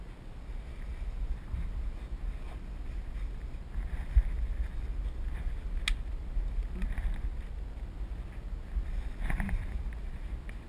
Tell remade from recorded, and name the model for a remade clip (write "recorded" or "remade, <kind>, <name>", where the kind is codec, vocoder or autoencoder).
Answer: recorded